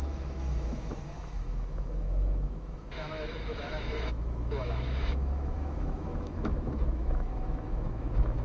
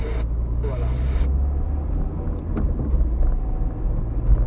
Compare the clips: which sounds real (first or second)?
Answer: second